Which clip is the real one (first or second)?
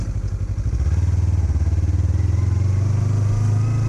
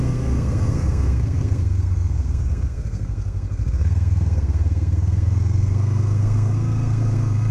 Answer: first